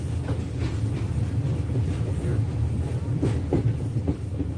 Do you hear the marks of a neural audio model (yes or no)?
no